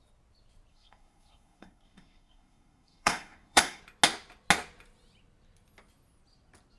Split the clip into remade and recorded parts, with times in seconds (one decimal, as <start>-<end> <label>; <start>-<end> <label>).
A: 0.0-0.7 recorded; 0.7-3.8 remade; 3.8-6.8 recorded